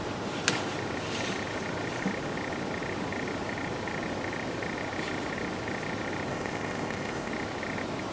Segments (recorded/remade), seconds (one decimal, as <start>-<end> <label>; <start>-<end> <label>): 0.0-6.3 recorded; 6.3-7.3 remade; 7.3-8.1 recorded